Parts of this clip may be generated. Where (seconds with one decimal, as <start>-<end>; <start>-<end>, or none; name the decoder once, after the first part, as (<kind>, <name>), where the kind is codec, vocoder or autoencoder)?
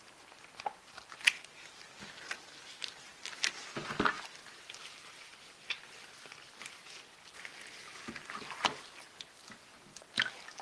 none